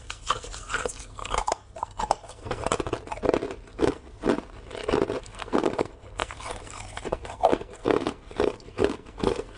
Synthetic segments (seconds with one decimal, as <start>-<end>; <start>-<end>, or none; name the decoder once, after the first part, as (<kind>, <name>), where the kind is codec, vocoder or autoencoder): 0.0-2.6 (codec, SNAC); 3.8-4.2; 5.2-9.6